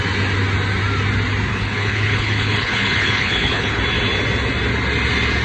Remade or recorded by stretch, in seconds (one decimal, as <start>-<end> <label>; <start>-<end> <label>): 0.0-1.5 recorded; 1.5-3.8 remade; 3.8-5.4 recorded